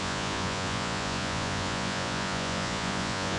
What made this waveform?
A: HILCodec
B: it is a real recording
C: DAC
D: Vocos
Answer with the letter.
D